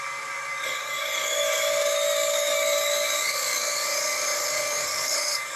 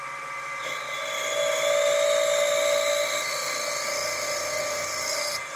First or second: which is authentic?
second